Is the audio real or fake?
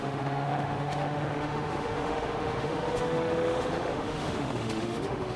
fake